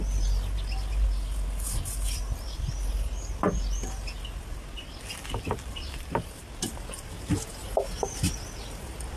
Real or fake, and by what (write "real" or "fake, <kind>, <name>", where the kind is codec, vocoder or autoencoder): real